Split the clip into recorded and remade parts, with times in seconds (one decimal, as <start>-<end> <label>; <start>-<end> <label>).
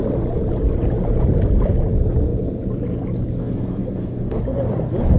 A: 0.0-3.4 recorded; 3.4-4.4 remade; 4.4-5.2 recorded